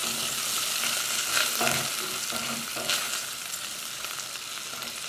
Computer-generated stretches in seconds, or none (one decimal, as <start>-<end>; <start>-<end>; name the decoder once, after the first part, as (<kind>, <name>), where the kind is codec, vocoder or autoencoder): none